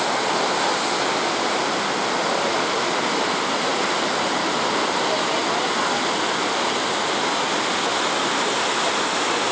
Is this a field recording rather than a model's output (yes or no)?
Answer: yes